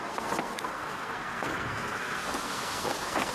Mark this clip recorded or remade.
remade